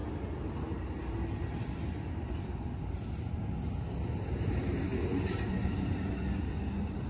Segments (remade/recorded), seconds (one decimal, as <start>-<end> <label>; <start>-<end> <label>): 0.0-7.1 recorded